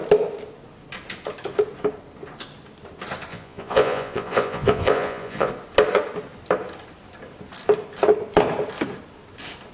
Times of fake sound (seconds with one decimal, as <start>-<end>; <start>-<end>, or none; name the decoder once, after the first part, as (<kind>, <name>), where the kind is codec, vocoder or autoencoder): 3.3-5.5 (vocoder, Vocos)

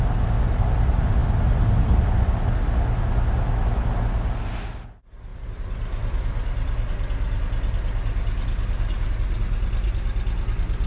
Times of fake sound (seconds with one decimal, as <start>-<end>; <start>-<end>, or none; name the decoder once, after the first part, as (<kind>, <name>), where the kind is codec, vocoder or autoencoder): none

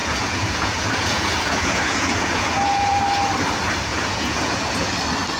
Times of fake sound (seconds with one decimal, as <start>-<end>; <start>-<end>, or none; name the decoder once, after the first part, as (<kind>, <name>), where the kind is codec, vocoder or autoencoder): 0.0-3.0 (vocoder, Vocos); 3.9-4.9

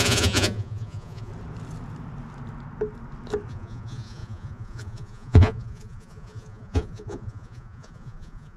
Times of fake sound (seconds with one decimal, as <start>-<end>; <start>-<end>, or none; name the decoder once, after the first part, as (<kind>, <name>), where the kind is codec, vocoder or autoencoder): 0.0-1.3 (vocoder, Vocos); 3.5-8.6

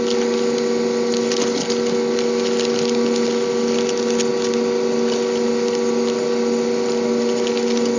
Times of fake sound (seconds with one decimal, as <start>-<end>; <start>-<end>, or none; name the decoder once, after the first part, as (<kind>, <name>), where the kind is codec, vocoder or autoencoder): none

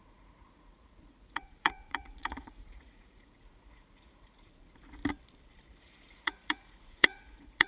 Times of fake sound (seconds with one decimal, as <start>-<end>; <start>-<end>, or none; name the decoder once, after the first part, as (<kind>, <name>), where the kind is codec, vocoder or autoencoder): 0.0-5.0 (vocoder, Vocos); 5.8-7.7